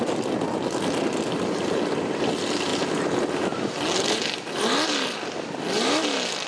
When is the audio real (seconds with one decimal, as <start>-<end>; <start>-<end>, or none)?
0.0-6.5